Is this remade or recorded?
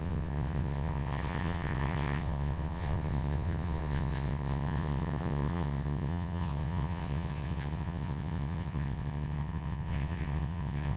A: remade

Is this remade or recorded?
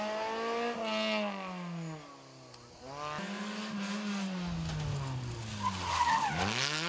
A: recorded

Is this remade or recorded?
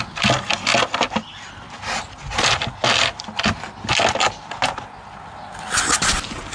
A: recorded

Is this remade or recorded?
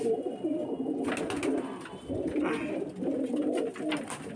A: recorded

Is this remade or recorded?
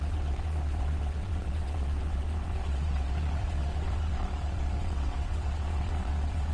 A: remade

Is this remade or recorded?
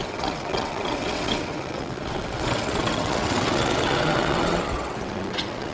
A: remade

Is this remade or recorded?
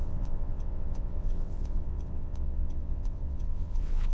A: remade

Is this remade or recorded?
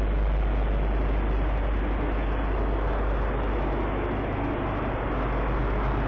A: recorded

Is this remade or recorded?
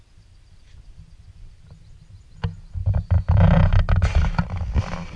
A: recorded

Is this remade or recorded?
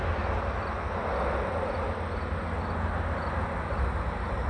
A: recorded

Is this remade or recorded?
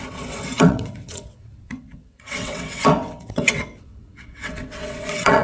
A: remade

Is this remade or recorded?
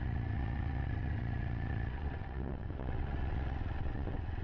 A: remade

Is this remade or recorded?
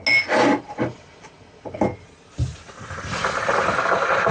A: recorded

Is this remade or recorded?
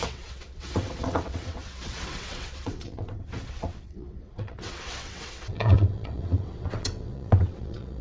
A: remade